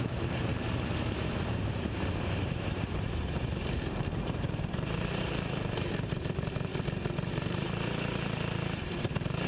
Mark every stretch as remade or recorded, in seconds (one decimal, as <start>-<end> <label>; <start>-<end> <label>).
0.0-6.7 remade; 6.7-7.3 recorded; 7.3-9.5 remade

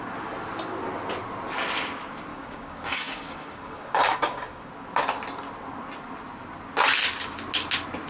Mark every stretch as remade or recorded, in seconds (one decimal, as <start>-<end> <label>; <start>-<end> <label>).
0.0-2.3 recorded; 2.3-4.7 remade; 4.7-8.1 recorded